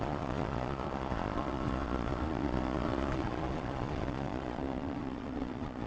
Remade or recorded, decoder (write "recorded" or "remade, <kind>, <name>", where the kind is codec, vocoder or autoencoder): remade, vocoder, Vocos